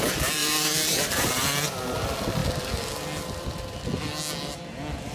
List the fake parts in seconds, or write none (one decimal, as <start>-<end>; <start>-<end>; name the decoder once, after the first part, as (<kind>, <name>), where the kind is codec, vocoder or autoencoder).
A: 0.4-1.3 (vocoder, BigVGAN v2)